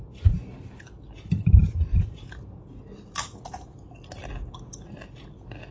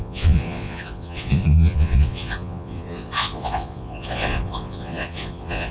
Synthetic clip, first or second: second